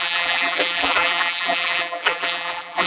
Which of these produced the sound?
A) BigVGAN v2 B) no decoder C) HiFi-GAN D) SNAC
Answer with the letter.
A